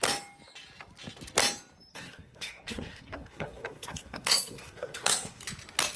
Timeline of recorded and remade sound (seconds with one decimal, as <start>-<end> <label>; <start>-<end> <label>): 0.0-1.9 recorded; 1.9-5.4 remade; 5.4-6.0 recorded